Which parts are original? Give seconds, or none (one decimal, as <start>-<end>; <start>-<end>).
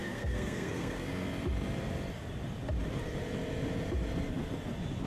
1.1-5.1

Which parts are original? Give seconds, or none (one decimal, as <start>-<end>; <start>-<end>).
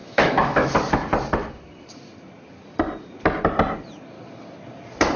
0.8-5.2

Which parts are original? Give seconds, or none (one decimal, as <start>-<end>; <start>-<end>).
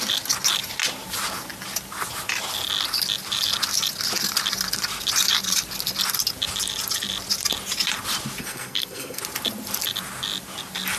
0.0-8.4; 9.2-11.0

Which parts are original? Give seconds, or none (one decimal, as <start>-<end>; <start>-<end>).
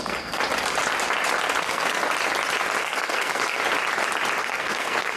0.4-1.6; 2.0-2.8; 3.6-4.4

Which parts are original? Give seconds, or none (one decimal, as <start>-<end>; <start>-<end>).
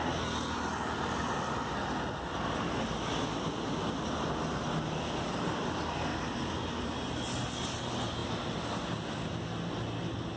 0.0-10.4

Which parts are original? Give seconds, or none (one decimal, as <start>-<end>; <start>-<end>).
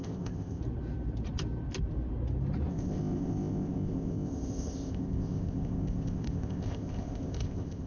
0.6-2.7